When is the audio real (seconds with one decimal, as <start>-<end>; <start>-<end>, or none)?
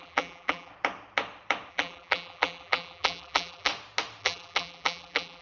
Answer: 0.7-1.7; 3.7-4.2